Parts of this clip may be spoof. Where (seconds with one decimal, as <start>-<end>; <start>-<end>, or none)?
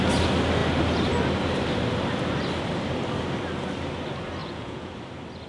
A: 4.4-4.9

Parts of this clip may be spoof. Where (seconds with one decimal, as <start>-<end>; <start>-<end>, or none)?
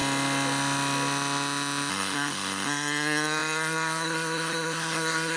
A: 1.9-5.4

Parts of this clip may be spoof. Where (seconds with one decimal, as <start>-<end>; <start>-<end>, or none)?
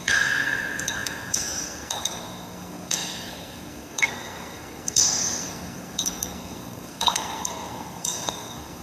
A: 0.0-8.8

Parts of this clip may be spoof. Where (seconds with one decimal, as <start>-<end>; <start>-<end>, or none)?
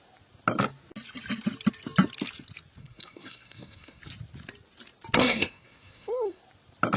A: 2.8-4.0; 5.2-6.4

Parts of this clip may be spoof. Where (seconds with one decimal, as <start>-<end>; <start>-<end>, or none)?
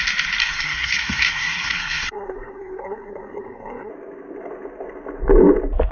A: 0.4-3.9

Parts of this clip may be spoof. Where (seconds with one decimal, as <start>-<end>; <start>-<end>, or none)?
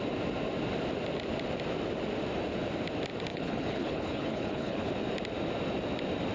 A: 3.3-4.9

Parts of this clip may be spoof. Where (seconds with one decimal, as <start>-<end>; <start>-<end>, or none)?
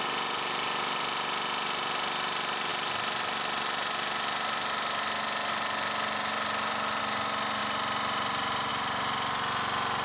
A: none